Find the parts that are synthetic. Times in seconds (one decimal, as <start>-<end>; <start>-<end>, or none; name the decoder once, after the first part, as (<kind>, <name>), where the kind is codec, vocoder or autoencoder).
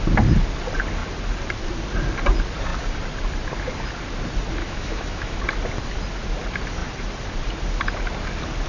4.6-5.4 (autoencoder, DAC-VAE)